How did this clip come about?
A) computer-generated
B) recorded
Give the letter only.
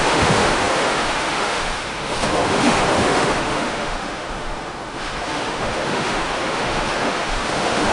A